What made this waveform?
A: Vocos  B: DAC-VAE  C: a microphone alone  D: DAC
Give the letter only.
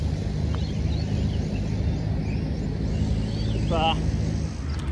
C